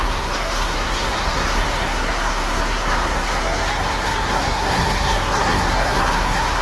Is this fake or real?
fake